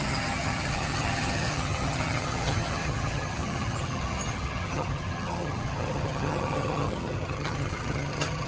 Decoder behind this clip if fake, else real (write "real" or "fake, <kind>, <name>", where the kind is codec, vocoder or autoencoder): fake, vocoder, HiFi-GAN